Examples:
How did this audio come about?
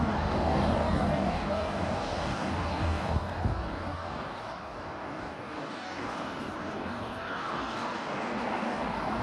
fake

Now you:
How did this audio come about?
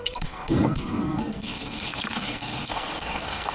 fake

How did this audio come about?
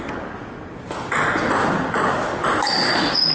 real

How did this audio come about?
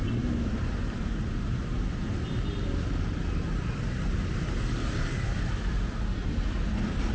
real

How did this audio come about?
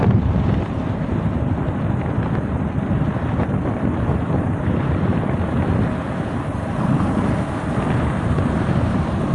fake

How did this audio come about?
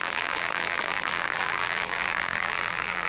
fake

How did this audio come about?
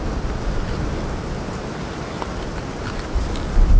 real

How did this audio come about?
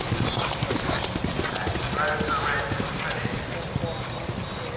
real